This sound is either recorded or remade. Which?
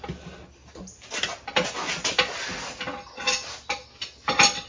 recorded